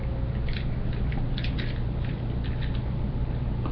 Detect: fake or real real